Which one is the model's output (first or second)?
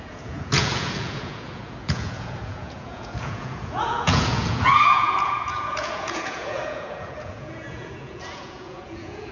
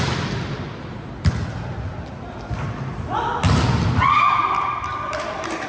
first